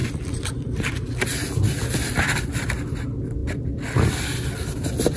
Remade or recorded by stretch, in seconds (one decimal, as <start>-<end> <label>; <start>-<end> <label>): 0.0-5.2 recorded